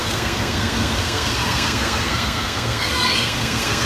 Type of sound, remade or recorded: remade